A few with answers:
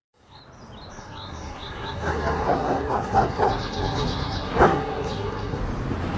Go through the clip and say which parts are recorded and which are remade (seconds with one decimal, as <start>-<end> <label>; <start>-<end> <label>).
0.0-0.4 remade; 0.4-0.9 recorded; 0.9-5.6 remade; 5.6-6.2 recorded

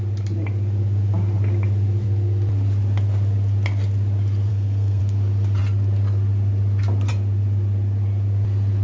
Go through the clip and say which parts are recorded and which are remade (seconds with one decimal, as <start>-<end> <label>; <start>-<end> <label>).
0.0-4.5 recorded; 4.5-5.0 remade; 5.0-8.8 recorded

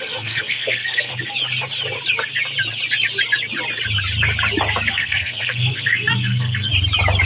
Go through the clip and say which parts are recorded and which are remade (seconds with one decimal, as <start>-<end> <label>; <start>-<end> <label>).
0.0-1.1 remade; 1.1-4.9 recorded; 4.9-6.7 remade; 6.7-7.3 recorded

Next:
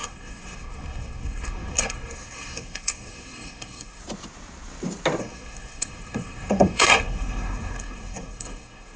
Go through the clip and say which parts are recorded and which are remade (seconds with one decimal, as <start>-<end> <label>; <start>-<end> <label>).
0.0-4.0 remade; 4.0-5.2 recorded; 5.2-9.0 remade